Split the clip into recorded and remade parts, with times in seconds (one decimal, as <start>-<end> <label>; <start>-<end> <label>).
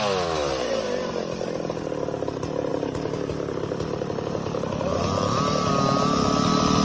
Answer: 0.0-2.7 recorded; 2.7-5.7 remade; 5.7-6.8 recorded